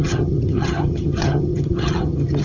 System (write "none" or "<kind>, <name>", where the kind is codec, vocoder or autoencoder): vocoder, HiFi-GAN